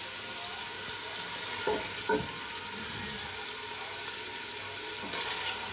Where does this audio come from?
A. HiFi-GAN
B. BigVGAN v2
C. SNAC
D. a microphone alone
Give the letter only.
D